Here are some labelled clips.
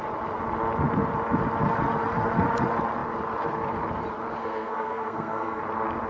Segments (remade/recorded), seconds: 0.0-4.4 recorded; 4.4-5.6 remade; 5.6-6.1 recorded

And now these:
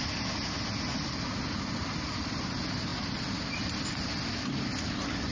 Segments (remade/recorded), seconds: 0.0-5.3 recorded